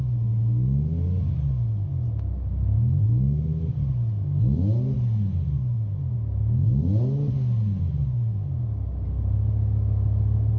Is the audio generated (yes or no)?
no